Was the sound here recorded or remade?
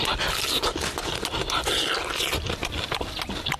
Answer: recorded